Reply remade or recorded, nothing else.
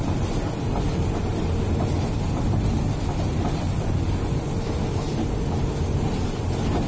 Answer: recorded